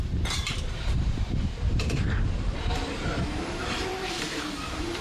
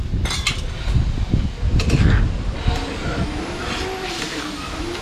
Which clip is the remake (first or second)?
first